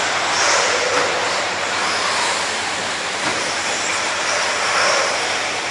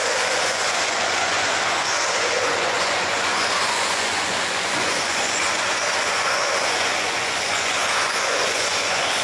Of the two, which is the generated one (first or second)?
second